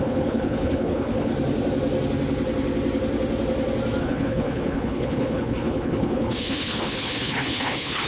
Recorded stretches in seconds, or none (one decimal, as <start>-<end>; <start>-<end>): 1.3-4.0